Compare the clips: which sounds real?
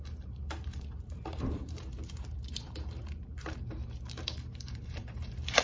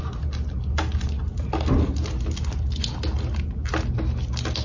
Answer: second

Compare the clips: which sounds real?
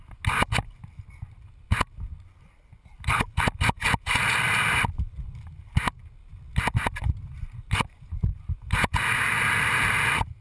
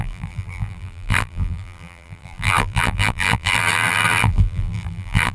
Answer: first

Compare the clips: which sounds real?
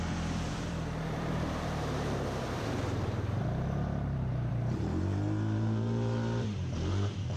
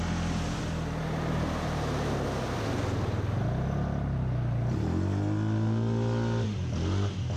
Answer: second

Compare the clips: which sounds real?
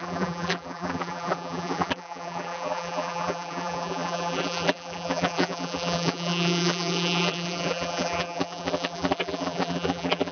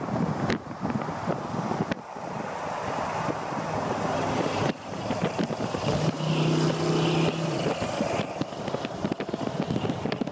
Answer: second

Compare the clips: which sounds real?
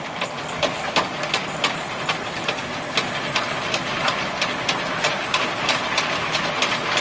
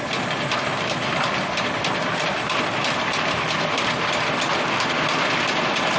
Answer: first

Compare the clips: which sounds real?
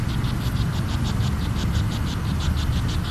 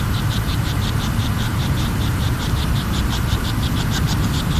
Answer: first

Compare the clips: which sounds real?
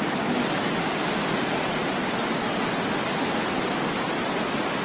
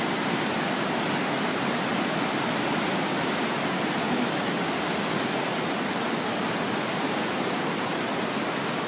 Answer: first